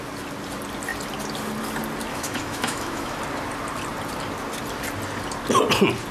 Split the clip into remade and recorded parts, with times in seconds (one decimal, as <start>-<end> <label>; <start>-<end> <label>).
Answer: 0.0-2.1 recorded; 2.1-3.2 remade; 3.2-6.1 recorded